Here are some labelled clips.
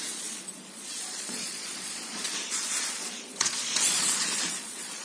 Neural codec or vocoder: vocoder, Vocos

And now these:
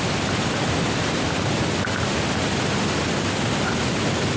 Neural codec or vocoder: none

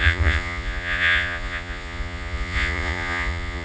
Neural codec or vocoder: vocoder, Vocos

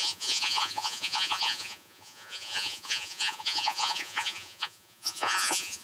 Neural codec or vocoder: vocoder, Vocos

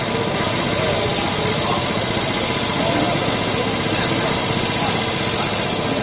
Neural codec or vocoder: none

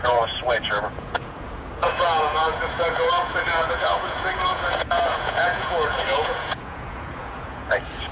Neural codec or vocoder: vocoder, Vocos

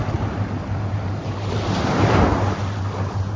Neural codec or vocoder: none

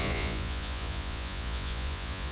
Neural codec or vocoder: vocoder, Vocos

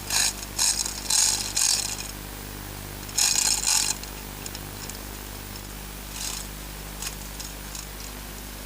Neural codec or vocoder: none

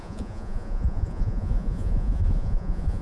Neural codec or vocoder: vocoder, Vocos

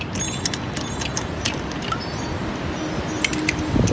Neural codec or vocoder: none